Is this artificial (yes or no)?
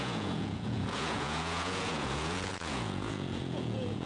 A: yes